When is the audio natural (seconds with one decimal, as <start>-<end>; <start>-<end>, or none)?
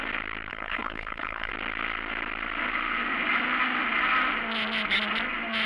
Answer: 0.0-0.5; 1.5-5.7